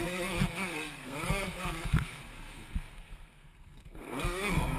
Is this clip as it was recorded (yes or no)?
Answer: no